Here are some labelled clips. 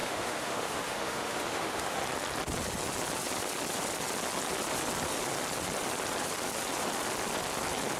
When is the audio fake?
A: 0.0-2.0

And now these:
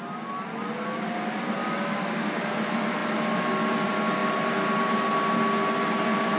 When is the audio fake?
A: 1.6-2.4

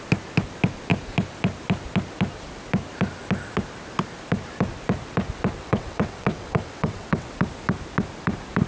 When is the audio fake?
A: 5.6-7.3

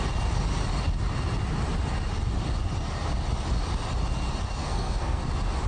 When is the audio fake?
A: 4.6-5.2

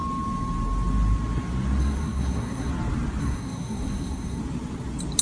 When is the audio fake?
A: 1.8-2.7; 3.2-4.4